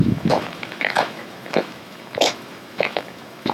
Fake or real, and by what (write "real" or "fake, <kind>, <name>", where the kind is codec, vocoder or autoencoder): fake, autoencoder, DAC-VAE